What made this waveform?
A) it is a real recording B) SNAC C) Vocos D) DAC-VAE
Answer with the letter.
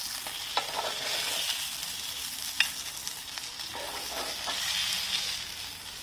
A